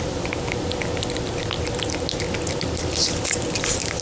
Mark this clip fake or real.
real